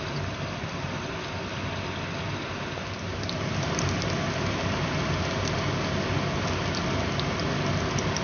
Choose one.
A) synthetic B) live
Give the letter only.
B